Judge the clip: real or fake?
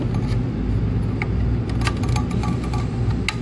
real